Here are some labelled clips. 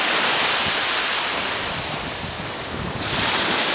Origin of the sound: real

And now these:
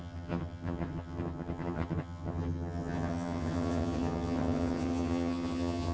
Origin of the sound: fake